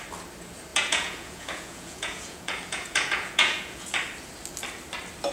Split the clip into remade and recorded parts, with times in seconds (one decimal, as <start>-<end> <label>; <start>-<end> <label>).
0.0-0.7 recorded; 0.7-3.9 remade; 3.9-5.3 recorded